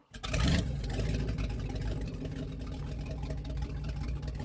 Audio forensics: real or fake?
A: real